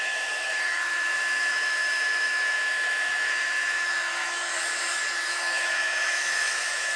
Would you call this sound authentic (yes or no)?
no